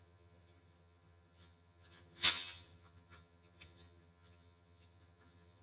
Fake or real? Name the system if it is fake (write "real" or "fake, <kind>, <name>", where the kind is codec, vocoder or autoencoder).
fake, vocoder, HiFi-GAN